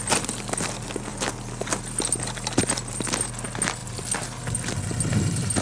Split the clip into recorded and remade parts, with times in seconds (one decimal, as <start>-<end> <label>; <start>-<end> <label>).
0.0-5.6 recorded